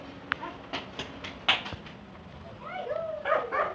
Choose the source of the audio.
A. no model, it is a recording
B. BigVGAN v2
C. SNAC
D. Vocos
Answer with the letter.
A